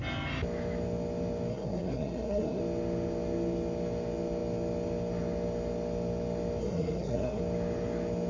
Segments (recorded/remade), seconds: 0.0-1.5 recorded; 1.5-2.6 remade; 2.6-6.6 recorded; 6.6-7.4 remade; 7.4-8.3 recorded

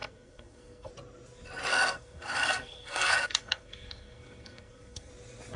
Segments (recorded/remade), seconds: 0.0-0.9 remade; 0.9-1.7 recorded; 1.7-5.1 remade; 5.1-5.6 recorded

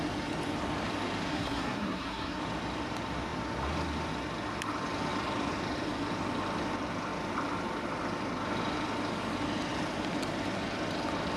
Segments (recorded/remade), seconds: 0.0-1.3 recorded; 1.3-2.4 remade; 2.4-11.4 recorded

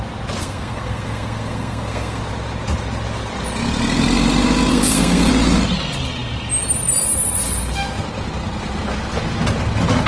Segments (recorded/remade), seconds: 0.0-0.4 recorded; 0.4-2.2 remade; 2.2-4.7 recorded; 4.7-5.3 remade; 5.3-10.1 recorded

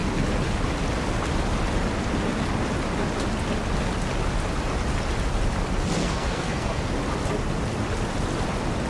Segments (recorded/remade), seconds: 0.0-6.0 recorded; 6.0-6.8 remade; 6.8-8.9 recorded

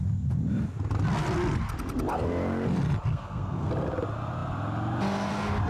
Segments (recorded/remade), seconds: 0.0-3.1 recorded; 3.1-3.7 remade; 3.7-5.7 recorded

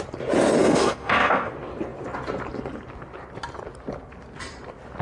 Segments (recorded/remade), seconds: 0.0-0.6 recorded; 0.6-1.5 remade; 1.5-5.0 recorded

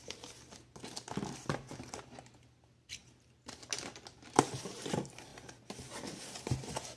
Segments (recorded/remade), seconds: 0.0-7.0 recorded